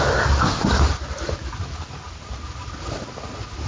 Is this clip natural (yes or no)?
yes